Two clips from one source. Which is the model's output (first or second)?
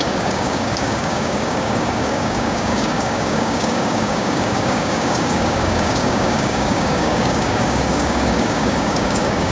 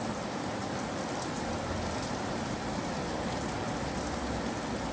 first